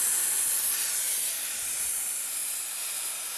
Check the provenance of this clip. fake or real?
real